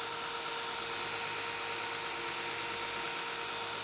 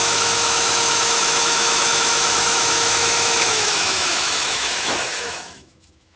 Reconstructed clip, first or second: second